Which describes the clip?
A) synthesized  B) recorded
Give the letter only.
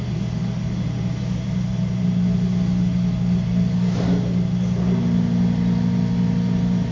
B